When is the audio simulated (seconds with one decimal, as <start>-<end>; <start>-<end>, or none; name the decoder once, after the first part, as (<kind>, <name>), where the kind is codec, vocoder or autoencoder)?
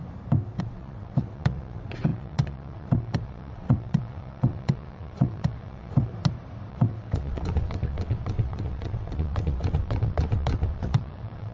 0.6-6.1 (vocoder, WaveNeXt); 6.7-11.5